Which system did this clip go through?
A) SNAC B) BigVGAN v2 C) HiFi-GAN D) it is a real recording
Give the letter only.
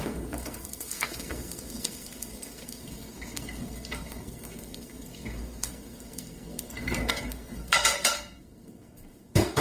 A